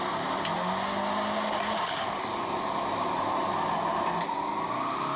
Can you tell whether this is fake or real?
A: real